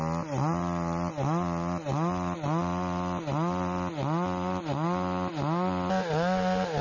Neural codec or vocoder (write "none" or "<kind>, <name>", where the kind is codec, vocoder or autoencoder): none